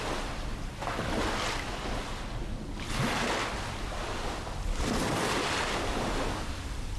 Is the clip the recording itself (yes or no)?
yes